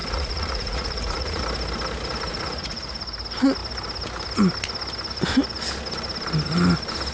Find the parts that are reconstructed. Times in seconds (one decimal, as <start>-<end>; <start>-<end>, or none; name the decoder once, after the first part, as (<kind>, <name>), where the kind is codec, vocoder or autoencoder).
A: 0.0-1.4 (vocoder, Vocos); 2.3-2.9